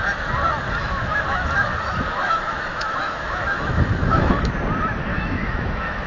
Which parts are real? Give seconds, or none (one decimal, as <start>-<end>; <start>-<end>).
0.0-0.8; 4.5-5.1